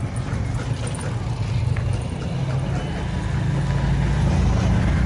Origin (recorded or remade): recorded